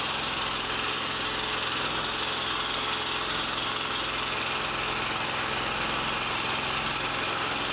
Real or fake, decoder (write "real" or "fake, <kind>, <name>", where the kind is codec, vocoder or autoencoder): real